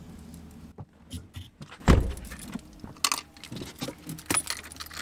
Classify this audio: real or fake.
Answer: real